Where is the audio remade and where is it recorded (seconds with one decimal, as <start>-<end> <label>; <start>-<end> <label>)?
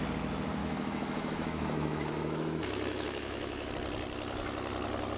0.0-0.6 recorded; 0.6-3.7 remade; 3.7-5.2 recorded